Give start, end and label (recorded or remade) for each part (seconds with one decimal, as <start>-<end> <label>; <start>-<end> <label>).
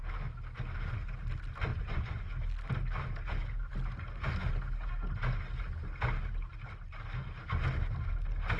0.0-1.7 recorded; 1.7-2.3 remade; 2.3-8.6 recorded